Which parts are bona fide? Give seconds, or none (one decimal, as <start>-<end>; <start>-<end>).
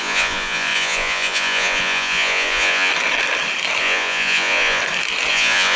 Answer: 2.9-3.8; 4.8-5.3